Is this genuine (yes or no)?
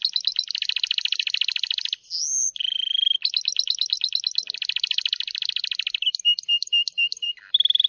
yes